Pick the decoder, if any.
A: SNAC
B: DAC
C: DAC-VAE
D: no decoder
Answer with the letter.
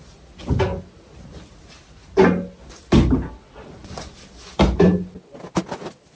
D